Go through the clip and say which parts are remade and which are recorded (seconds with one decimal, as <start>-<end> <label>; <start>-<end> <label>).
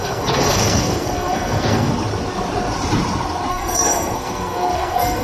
0.0-1.9 remade; 1.9-3.5 recorded; 3.5-5.2 remade